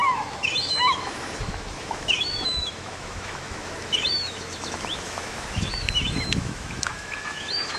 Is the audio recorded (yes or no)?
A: no